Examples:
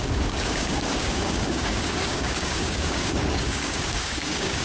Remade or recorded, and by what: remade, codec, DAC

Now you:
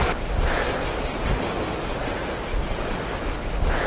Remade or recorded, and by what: recorded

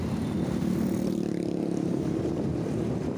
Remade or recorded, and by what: recorded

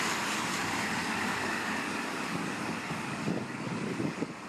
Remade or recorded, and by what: remade, codec, DAC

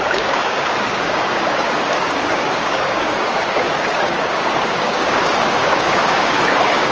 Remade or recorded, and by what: remade, codec, DAC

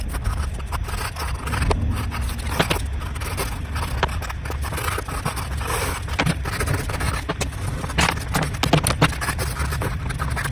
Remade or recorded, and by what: recorded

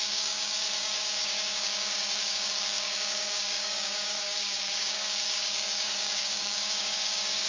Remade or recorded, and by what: remade, codec, DAC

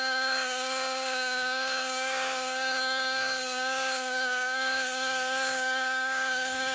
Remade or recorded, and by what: remade, codec, DAC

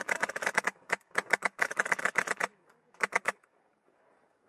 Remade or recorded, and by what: remade, codec, DAC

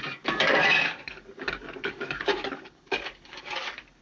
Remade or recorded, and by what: remade, codec, DAC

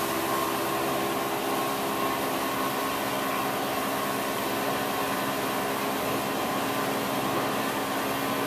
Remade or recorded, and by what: recorded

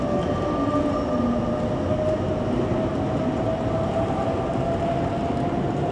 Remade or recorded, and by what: recorded